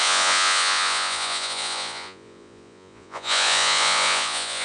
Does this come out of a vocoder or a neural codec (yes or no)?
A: yes